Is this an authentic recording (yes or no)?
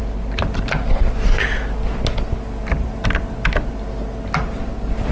yes